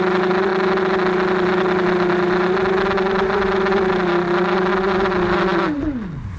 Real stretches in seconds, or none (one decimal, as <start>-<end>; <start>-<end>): 0.0-6.4